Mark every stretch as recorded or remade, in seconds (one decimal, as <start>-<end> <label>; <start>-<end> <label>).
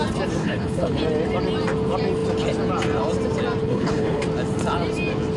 0.0-0.4 recorded; 0.4-1.0 remade; 1.0-3.6 recorded; 3.6-4.2 remade; 4.2-5.4 recorded